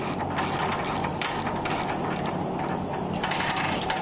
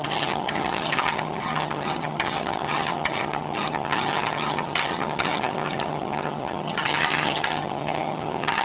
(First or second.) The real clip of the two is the first